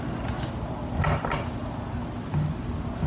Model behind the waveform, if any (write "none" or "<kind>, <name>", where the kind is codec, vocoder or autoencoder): none